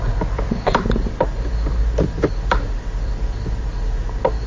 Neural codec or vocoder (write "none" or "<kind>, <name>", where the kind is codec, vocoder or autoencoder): none